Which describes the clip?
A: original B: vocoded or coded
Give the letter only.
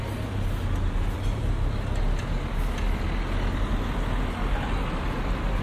A